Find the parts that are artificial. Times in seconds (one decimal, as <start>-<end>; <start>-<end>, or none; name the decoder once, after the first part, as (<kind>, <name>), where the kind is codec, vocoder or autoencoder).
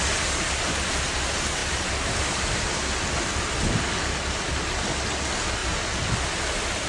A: none